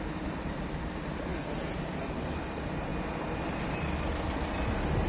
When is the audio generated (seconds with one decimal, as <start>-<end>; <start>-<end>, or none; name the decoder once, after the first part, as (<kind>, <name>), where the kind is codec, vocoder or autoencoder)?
0.0-2.9 (vocoder, BigVGAN v2); 4.1-5.1